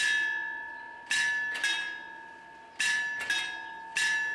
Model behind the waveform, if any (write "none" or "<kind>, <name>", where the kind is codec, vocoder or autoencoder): none